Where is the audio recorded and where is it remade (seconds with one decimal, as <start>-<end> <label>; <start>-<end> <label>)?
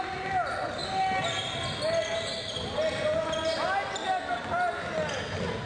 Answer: 0.0-5.7 recorded